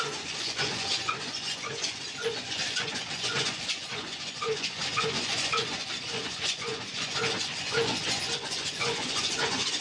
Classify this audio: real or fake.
fake